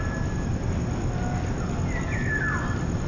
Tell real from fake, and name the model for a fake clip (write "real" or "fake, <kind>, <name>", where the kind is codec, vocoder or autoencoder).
real